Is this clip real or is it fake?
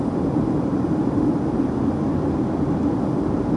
real